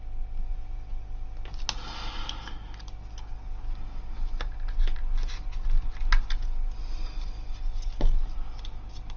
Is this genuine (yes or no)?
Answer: yes